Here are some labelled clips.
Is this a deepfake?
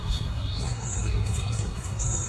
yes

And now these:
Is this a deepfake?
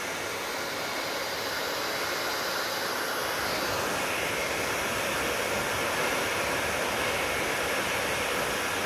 no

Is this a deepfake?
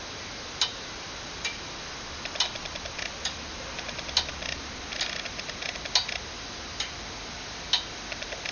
no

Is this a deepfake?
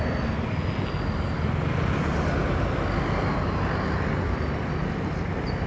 no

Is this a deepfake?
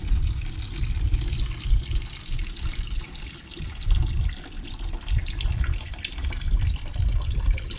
no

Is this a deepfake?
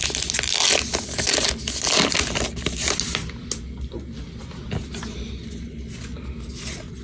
no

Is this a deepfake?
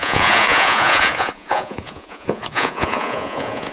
yes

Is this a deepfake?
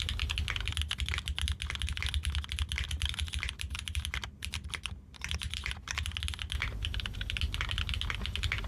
no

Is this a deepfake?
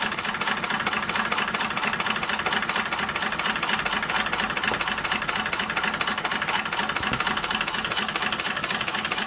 no